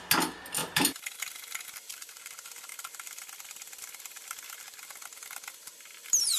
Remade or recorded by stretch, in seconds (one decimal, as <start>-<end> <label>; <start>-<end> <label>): 0.0-0.6 recorded; 0.6-2.2 remade; 2.2-2.7 recorded; 2.7-4.6 remade; 4.6-6.4 recorded